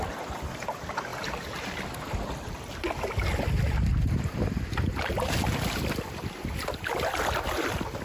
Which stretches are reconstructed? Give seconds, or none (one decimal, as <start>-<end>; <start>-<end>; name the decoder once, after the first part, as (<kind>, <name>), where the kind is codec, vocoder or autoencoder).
none